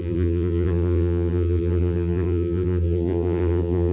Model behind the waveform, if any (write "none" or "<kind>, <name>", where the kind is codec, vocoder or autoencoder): vocoder, BigVGAN v2